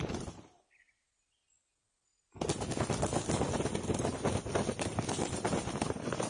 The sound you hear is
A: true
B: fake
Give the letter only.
A